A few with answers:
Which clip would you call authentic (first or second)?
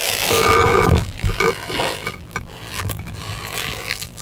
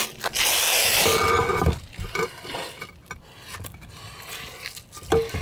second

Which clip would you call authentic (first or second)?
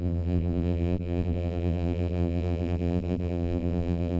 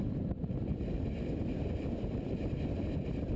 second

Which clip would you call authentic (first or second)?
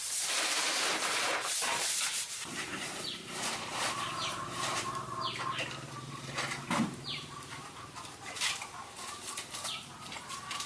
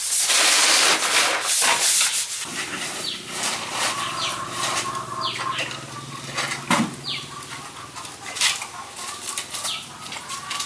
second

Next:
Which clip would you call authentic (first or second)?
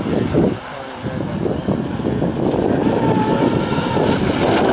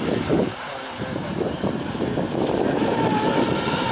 first